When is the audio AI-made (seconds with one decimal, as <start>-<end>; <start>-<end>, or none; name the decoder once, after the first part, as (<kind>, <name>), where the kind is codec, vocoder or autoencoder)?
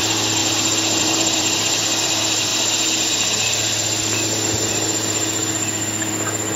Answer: 0.0-0.4 (vocoder, BigVGAN v2); 1.0-2.5